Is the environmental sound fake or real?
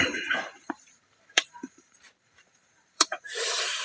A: fake